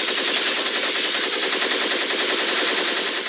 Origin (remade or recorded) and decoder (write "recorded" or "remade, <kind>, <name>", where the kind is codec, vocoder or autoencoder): recorded